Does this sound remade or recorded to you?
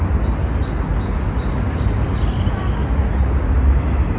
recorded